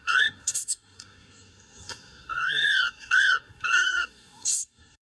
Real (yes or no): no